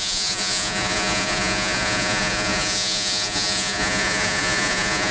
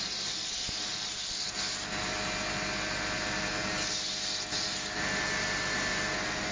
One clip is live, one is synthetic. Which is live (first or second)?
second